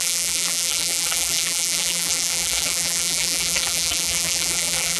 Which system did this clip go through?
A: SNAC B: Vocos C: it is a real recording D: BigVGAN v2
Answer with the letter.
D